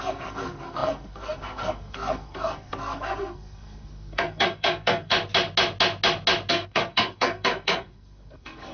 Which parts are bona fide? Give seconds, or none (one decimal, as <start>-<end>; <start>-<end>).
5.1-6.5